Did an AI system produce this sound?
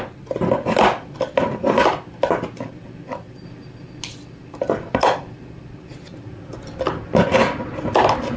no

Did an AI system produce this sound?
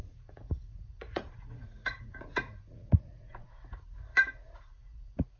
yes